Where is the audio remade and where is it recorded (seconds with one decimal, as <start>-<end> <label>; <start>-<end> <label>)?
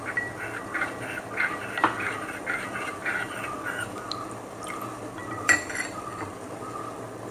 0.0-3.0 recorded; 3.0-4.7 remade; 4.7-5.2 recorded; 5.2-6.0 remade; 6.0-7.3 recorded